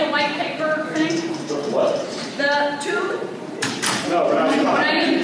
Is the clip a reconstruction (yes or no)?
yes